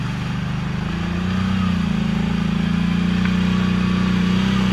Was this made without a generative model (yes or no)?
yes